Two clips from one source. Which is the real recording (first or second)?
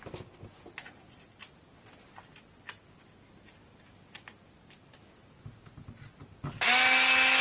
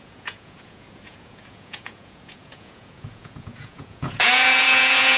first